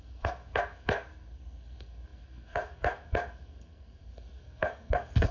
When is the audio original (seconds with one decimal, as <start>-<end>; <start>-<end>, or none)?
none